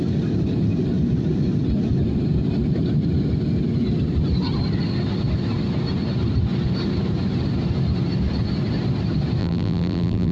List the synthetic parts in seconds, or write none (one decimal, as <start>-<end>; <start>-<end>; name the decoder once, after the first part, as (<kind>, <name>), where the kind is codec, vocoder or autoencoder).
9.4-10.3 (vocoder, BigVGAN v2)